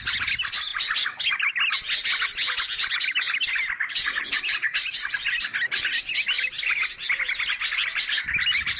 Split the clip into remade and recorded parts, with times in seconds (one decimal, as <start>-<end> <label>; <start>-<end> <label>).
0.0-8.8 recorded

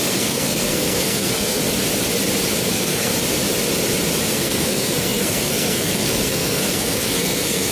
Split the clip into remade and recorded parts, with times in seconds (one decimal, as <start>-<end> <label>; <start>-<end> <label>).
0.0-1.6 remade; 1.6-2.7 recorded; 2.7-3.1 remade; 3.1-4.3 recorded; 4.3-7.7 remade

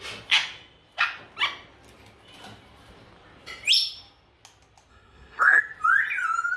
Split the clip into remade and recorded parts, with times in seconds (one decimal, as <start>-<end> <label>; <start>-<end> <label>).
0.0-4.9 recorded; 4.9-5.6 remade; 5.6-6.6 recorded

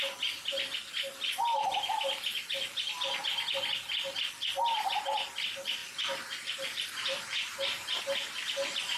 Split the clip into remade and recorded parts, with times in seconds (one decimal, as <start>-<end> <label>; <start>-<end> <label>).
0.0-5.8 recorded; 5.8-8.0 remade; 8.0-9.0 recorded

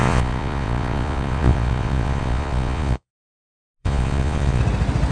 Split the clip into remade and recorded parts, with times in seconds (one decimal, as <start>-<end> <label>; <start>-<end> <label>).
0.0-3.1 remade; 3.1-3.8 recorded; 3.8-4.6 remade; 4.6-5.1 recorded

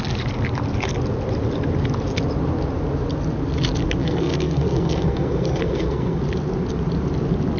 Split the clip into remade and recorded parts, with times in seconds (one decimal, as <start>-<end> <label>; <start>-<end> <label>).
0.0-4.0 recorded; 4.0-6.2 remade; 6.2-7.6 recorded